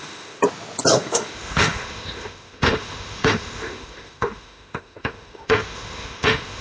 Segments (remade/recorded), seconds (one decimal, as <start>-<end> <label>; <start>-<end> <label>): 0.0-0.4 remade; 0.4-0.9 recorded; 0.9-6.6 remade